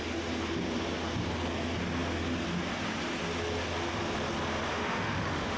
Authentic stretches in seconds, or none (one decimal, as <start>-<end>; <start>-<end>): 0.0-4.7